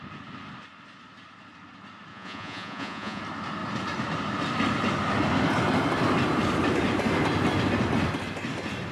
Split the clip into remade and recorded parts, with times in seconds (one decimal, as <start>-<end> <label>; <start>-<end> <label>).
0.0-2.1 recorded; 2.1-3.2 remade; 3.2-8.9 recorded